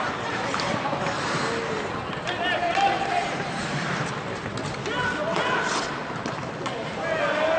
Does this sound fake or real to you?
real